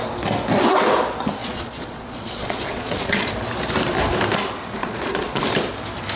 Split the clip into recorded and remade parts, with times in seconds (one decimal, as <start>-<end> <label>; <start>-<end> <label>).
0.0-1.4 recorded; 1.4-3.3 remade; 3.3-4.8 recorded; 4.8-5.4 remade; 5.4-6.2 recorded